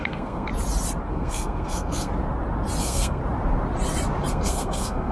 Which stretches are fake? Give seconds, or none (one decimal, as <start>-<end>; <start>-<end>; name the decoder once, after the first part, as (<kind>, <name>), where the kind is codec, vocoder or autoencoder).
0.0-0.5 (codec, SNAC); 1.1-2.1; 2.8-3.2; 4.3-5.1